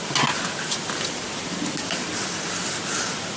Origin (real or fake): real